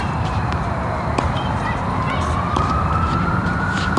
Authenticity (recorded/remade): remade